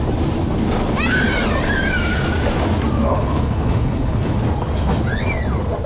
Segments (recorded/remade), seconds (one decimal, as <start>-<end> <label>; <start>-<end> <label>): 0.0-3.1 recorded; 3.1-4.4 remade; 4.4-5.9 recorded